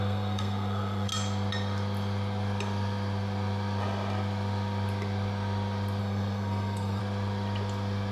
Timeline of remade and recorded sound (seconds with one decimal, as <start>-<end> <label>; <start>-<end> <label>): 0.0-1.1 remade; 1.1-6.0 recorded; 6.0-7.0 remade; 7.0-8.1 recorded

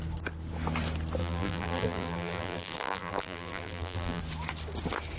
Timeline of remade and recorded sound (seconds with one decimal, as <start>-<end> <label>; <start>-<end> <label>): 0.0-1.2 recorded; 1.2-4.2 remade; 4.2-5.2 recorded